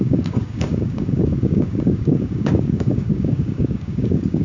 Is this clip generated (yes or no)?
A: yes